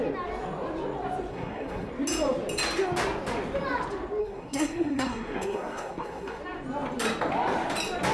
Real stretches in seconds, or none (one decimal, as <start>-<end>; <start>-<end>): 0.0-1.3; 1.9-4.2; 6.4-8.1